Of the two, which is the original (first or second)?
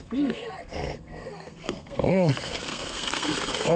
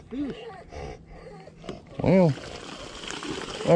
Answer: second